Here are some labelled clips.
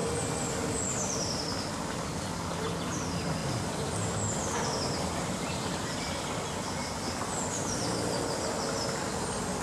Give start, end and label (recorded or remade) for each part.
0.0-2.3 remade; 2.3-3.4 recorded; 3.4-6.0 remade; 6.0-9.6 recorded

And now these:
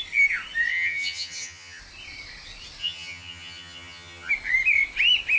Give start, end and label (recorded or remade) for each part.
0.0-0.7 recorded; 0.7-1.8 remade; 1.8-2.8 recorded; 2.8-4.3 remade; 4.3-5.4 recorded

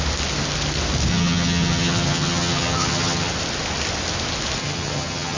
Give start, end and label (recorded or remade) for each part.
0.0-1.1 recorded; 1.1-3.3 remade; 3.3-4.6 recorded; 4.6-5.4 remade

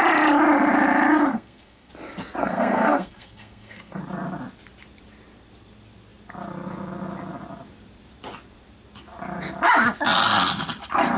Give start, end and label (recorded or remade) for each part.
0.0-1.3 recorded; 1.3-1.9 remade; 1.9-2.4 recorded; 2.4-4.0 remade; 4.0-11.2 recorded

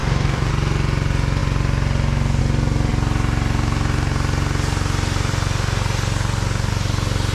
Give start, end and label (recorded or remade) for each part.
0.0-0.5 remade; 0.5-7.3 recorded

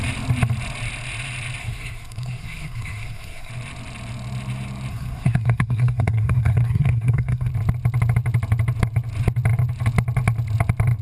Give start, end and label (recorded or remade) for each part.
0.0-1.6 recorded; 1.6-3.5 remade; 3.5-4.9 recorded; 4.9-7.5 remade; 7.5-11.0 recorded